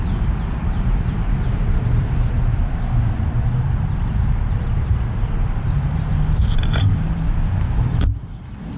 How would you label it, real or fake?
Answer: fake